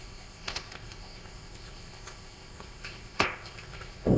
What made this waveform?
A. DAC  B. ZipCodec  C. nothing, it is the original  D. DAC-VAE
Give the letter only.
B